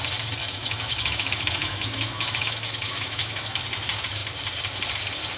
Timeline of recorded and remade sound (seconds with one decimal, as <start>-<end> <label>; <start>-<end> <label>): 0.0-0.4 recorded; 0.4-3.6 remade; 3.6-5.4 recorded